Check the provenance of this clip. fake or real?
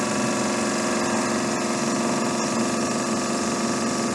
real